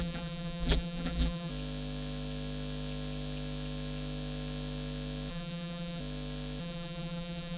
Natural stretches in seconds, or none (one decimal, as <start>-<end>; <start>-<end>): 1.5-5.3; 6.0-6.6